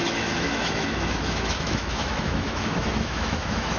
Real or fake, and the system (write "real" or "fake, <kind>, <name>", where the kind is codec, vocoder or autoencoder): fake, autoencoder, DAC-VAE